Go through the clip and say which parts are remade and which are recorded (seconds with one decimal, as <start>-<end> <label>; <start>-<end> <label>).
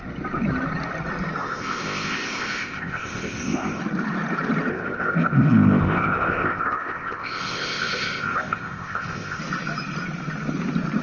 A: 0.0-1.4 recorded; 1.4-3.8 remade; 3.8-4.7 recorded; 4.7-9.4 remade; 9.4-11.0 recorded